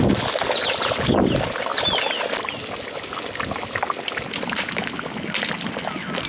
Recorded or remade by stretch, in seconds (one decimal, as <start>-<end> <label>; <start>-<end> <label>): 0.0-6.3 recorded

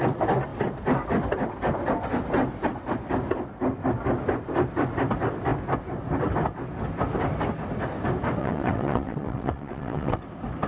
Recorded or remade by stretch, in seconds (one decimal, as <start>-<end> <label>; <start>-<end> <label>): 0.0-8.4 recorded; 8.4-10.2 remade; 10.2-10.7 recorded

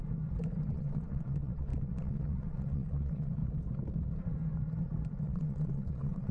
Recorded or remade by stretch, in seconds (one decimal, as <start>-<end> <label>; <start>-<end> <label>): 0.0-0.7 recorded; 0.7-3.4 remade; 3.4-5.2 recorded; 5.2-6.3 remade

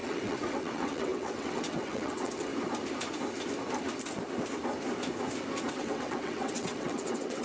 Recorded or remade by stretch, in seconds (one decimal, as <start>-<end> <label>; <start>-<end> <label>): 0.0-2.5 remade; 2.5-5.7 recorded; 5.7-7.4 remade

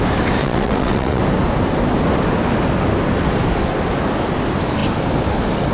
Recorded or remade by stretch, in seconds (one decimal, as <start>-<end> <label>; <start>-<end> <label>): 0.0-0.4 recorded; 0.4-1.2 remade; 1.2-5.7 recorded